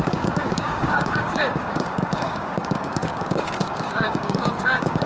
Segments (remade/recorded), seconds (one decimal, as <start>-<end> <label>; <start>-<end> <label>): 0.0-5.1 remade